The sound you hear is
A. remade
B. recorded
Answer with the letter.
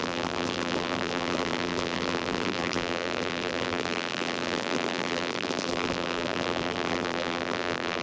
A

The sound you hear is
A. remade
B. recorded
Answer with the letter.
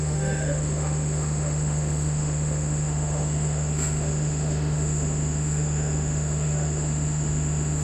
A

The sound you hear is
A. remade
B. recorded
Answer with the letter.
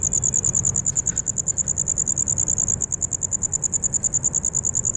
B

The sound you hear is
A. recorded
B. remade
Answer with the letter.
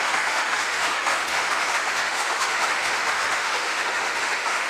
B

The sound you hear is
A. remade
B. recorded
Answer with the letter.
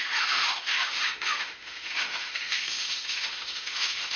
A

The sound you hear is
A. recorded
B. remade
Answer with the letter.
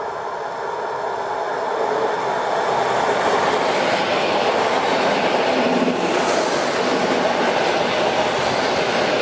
A